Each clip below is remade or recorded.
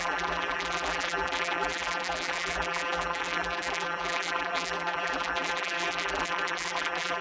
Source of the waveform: remade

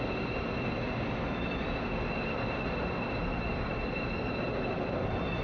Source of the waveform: recorded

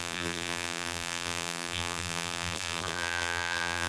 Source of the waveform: remade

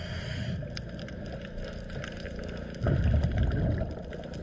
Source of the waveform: recorded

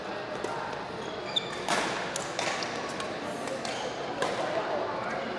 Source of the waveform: recorded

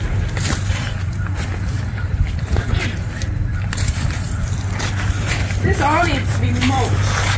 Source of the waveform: remade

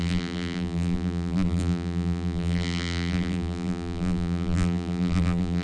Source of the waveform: remade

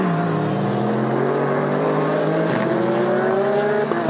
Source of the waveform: recorded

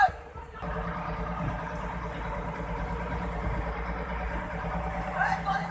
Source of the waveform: remade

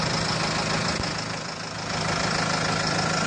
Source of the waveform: recorded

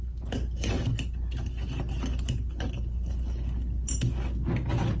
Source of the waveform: recorded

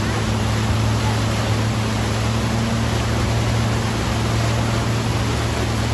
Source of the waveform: recorded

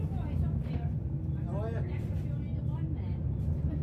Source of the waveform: recorded